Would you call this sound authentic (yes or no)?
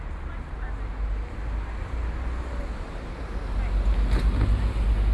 yes